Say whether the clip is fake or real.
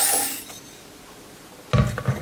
real